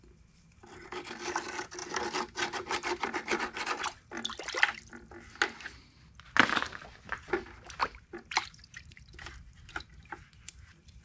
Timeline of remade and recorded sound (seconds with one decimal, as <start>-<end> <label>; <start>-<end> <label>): 0.0-7.8 recorded; 7.8-10.2 remade; 10.2-11.0 recorded